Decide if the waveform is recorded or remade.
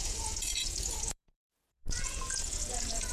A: remade